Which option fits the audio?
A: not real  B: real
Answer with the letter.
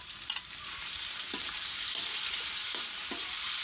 B